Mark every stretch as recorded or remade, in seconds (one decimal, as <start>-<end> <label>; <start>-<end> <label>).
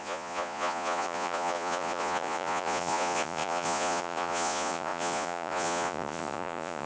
0.0-6.9 remade